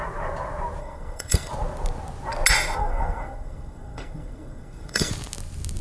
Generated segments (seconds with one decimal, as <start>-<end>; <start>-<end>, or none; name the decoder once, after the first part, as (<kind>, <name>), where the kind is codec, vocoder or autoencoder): 0.8-1.5 (codec, SNAC); 2.8-5.1